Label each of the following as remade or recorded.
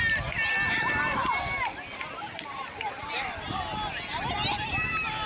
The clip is recorded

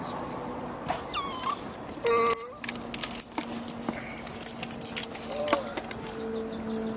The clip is recorded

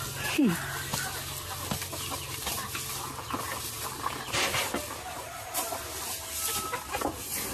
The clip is recorded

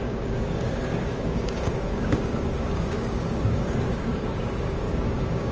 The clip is remade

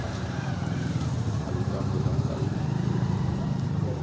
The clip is remade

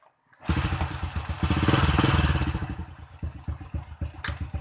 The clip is recorded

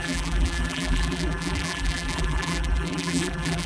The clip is remade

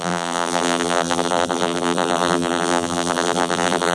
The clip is remade